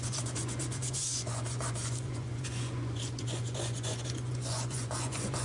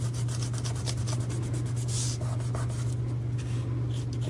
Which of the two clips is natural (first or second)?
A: second